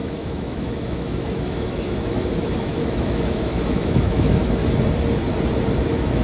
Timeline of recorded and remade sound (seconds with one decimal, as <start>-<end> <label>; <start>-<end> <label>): 0.0-4.6 remade; 4.6-5.8 recorded; 5.8-6.2 remade